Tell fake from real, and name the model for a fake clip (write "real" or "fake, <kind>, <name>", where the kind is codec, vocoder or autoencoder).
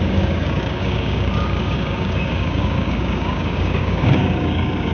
fake, codec, DAC